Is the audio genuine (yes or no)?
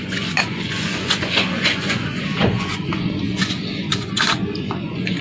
no